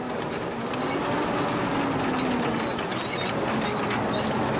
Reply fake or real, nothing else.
real